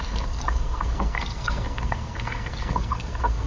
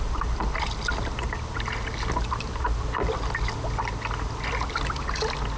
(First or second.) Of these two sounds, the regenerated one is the first